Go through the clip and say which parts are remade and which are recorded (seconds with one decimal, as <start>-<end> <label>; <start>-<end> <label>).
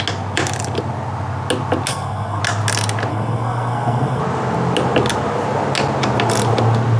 0.0-1.9 recorded; 1.9-2.4 remade; 2.4-3.1 recorded; 3.1-4.2 remade; 4.2-7.0 recorded